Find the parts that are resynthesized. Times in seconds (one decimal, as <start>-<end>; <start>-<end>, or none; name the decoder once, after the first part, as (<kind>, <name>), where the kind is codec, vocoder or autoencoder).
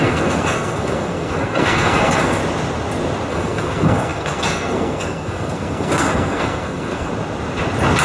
0.0-2.4 (codec, SNAC); 3.3-7.1